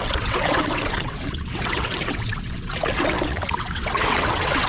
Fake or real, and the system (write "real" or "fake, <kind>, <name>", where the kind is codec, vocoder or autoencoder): fake, vocoder, WaveNeXt